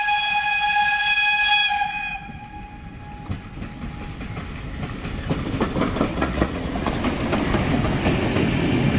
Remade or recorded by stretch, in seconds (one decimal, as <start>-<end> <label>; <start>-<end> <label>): 0.0-6.1 recorded; 6.1-6.9 remade; 6.9-9.0 recorded